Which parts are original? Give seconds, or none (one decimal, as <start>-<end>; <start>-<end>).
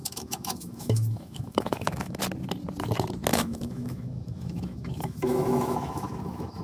2.2-3.3